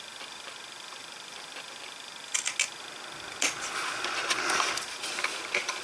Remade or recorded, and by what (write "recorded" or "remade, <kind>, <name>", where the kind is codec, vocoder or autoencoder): recorded